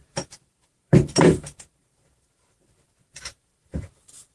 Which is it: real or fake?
fake